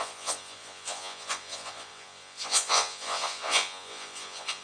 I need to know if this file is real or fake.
fake